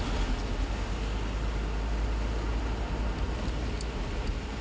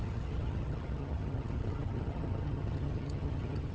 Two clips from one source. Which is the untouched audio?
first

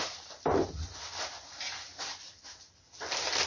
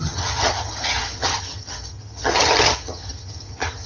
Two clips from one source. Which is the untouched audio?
first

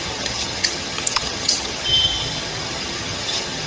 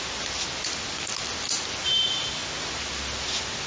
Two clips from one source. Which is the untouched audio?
second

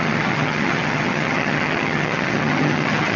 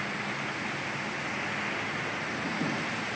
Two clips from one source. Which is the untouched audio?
second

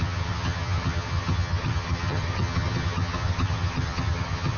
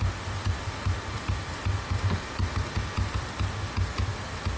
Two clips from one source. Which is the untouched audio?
second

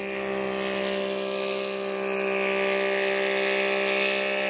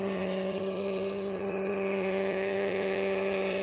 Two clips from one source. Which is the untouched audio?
first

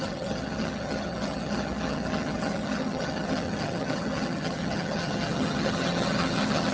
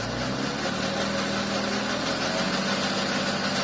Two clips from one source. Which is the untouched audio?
second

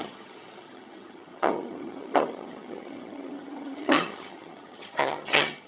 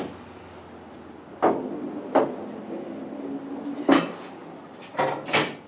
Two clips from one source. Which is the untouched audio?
second